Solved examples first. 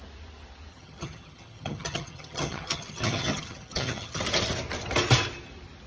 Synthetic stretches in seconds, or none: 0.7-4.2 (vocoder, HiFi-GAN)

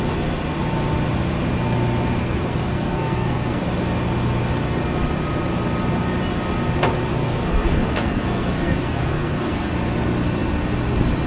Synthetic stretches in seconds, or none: 2.2-3.6 (codec, SNAC); 7.1-9.7